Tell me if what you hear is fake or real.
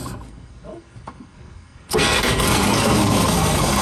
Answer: fake